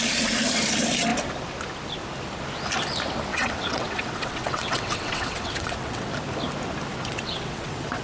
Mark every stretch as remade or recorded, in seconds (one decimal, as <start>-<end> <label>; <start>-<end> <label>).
0.0-3.3 recorded; 3.3-6.1 remade; 6.1-6.9 recorded; 6.9-8.0 remade